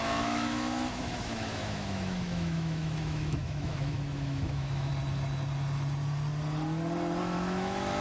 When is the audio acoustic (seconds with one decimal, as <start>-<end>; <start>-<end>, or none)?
4.9-7.2

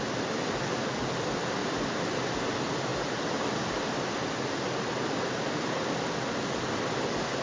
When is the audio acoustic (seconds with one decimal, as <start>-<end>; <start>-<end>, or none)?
0.0-7.4